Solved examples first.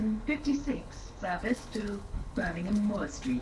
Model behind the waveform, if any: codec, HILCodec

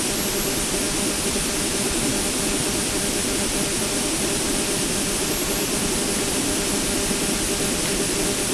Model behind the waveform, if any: none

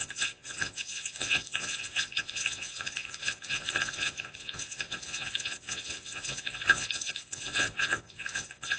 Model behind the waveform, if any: vocoder, Vocos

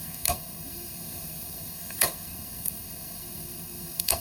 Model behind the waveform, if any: codec, SNAC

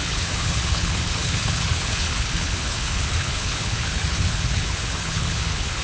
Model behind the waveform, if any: codec, HILCodec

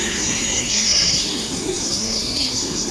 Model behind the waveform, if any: codec, SNAC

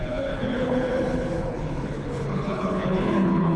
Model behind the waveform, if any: codec, HILCodec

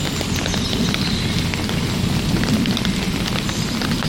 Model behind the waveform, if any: none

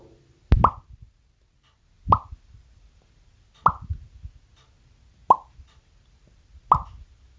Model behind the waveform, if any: none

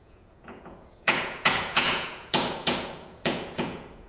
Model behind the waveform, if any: vocoder, Vocos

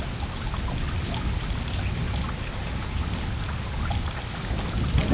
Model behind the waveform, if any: none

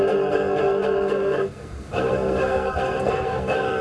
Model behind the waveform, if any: codec, SNAC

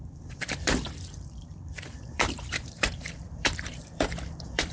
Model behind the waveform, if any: vocoder, BigVGAN v2